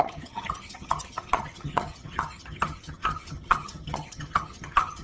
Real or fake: fake